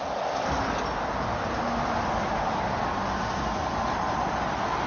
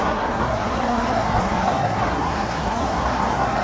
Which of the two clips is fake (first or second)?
second